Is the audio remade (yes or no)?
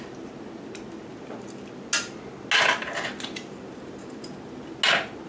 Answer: no